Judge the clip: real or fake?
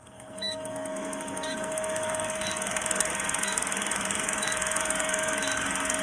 fake